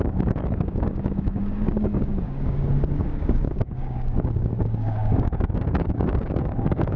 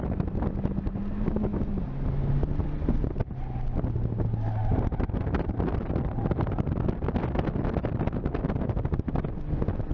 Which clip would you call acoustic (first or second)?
second